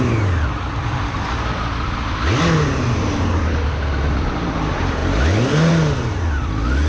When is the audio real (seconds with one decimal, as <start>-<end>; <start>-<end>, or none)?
0.0-6.9